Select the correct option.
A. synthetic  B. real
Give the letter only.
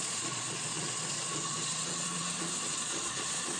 A